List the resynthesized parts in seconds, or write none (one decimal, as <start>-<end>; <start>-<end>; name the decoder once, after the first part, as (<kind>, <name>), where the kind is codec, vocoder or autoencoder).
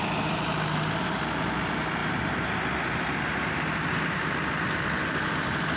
none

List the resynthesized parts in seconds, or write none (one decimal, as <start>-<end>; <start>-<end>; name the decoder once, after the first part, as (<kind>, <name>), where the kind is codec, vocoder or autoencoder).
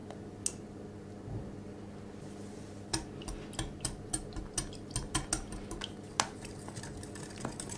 none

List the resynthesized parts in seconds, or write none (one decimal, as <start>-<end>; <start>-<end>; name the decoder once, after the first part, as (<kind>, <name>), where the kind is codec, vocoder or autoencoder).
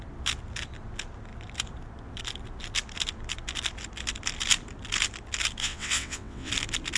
5.6-6.5 (vocoder, WaveNeXt)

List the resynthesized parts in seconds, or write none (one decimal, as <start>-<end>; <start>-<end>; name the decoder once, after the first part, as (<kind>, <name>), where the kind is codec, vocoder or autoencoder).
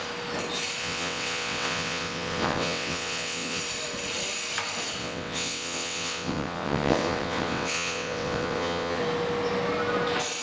0.8-3.6 (vocoder, WaveNeXt); 5.0-9.0